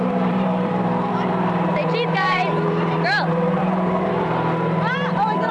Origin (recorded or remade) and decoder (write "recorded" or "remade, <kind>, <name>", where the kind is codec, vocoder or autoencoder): remade, vocoder, BigVGAN v2